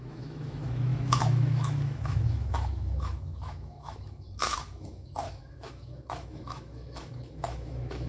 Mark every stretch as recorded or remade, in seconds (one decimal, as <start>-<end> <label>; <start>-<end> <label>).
0.0-8.1 remade